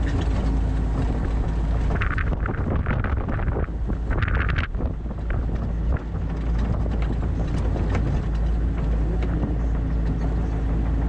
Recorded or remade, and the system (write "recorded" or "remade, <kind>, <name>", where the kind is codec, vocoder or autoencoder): recorded